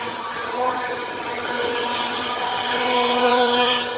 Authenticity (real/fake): fake